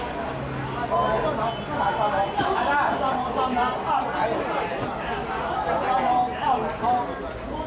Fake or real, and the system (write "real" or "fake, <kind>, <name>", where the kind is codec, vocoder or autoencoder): real